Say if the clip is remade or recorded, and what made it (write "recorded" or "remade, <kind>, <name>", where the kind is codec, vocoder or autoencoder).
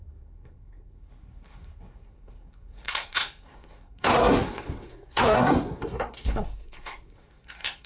remade, codec, SNAC